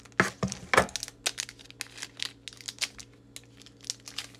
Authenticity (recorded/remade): recorded